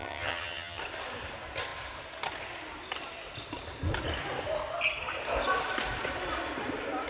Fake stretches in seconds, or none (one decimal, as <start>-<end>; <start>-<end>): 0.0-0.8

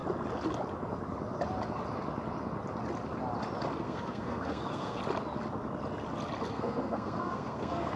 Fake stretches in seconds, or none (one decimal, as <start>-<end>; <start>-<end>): 3.8-5.0; 6.5-8.0

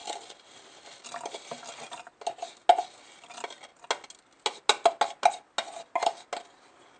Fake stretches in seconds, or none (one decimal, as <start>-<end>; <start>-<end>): none

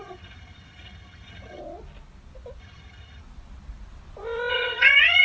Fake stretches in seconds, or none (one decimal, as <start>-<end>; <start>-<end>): 0.0-1.6; 2.6-3.2; 4.5-5.2

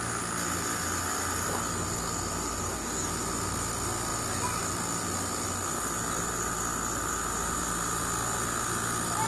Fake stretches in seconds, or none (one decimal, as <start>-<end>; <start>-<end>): 2.6-3.1

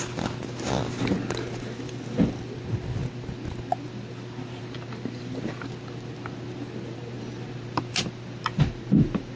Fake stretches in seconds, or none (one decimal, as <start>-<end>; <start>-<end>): none